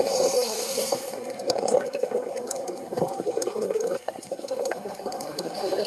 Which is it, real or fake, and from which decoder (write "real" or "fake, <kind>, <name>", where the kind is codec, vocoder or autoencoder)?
fake, codec, SNAC